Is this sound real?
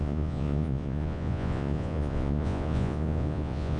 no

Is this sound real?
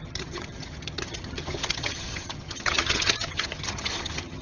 no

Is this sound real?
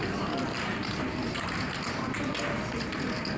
yes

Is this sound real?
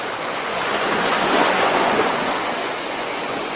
no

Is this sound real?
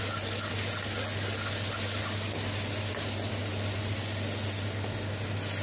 yes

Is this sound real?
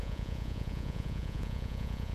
no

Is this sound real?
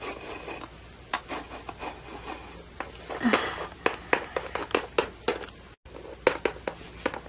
yes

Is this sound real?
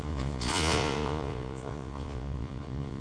no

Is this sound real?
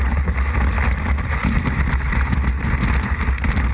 yes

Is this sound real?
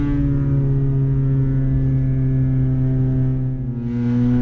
yes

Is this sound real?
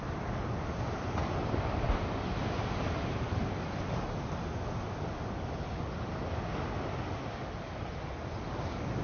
yes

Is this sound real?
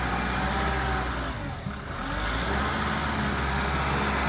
yes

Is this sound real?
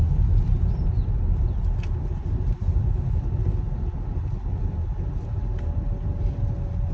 yes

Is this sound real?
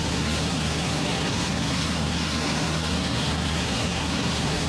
no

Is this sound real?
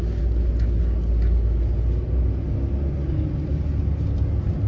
yes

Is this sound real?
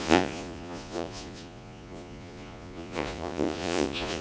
no